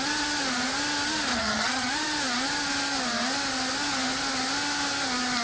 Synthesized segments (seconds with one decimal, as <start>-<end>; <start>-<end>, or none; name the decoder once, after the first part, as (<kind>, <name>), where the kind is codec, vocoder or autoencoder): 1.3-1.9 (vocoder, HiFi-GAN)